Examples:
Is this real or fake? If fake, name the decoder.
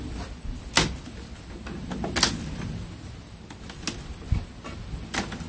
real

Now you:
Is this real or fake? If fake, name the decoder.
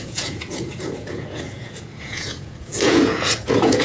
fake, vocoder, Vocos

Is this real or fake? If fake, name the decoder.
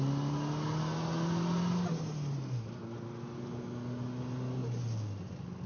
real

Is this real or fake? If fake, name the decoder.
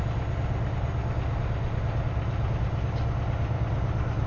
real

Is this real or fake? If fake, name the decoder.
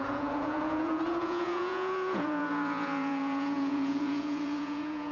fake, vocoder, Vocos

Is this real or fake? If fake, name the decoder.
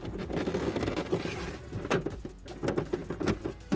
real